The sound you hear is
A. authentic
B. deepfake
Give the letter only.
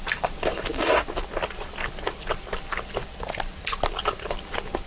A